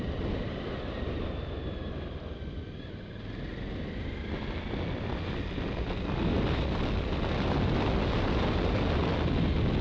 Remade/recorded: recorded